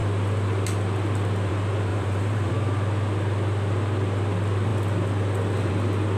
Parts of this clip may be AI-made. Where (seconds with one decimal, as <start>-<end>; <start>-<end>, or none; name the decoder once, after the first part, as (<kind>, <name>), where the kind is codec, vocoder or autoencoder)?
1.9-2.5 (vocoder, BigVGAN v2)